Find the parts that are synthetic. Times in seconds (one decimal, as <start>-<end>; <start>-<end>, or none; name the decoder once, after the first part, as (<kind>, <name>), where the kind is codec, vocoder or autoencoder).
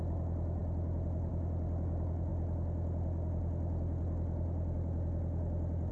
none